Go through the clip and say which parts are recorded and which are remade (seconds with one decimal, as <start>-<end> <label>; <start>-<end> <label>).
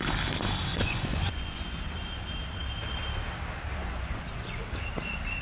0.0-0.7 recorded; 0.7-1.9 remade; 1.9-3.8 recorded; 3.8-4.6 remade; 4.6-5.4 recorded